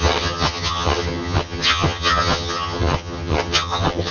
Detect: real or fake fake